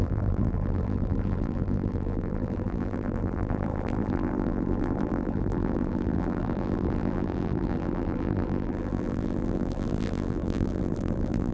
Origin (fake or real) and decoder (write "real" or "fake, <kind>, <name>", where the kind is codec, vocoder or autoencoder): fake, vocoder, BigVGAN v2